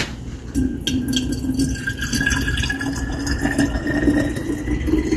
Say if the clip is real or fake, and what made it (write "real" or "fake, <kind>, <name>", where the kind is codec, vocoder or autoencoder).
real